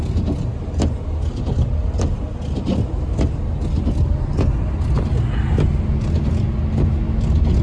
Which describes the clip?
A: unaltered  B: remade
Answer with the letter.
A